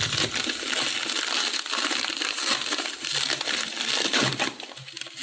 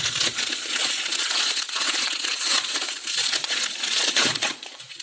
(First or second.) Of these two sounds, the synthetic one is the second